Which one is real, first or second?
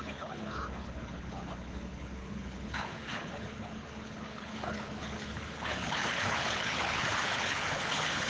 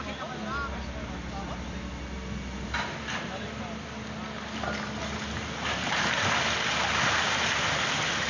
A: second